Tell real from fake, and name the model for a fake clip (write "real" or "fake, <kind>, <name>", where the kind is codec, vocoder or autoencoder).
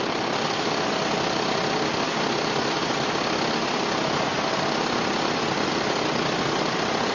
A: real